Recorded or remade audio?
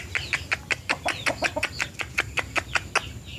recorded